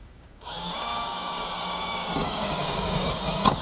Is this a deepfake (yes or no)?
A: yes